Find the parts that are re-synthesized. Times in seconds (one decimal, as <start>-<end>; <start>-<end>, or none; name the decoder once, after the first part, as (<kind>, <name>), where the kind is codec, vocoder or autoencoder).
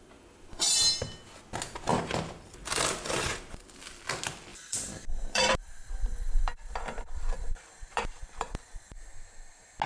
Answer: 1.9-4.0 (vocoder, BigVGAN v2); 4.5-9.0